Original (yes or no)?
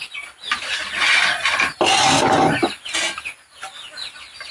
yes